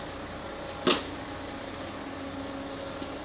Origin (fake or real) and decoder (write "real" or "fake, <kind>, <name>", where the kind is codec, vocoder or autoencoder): real